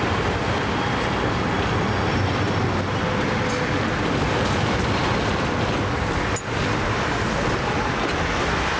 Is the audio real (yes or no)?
yes